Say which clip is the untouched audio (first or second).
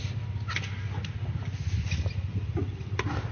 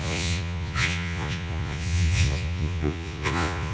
first